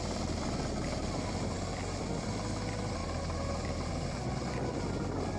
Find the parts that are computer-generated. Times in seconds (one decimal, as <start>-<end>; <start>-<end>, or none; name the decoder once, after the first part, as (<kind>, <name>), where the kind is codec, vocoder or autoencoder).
none